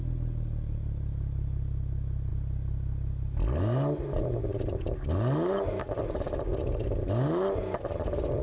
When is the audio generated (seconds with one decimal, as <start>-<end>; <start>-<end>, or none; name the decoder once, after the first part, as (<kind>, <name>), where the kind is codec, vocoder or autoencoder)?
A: none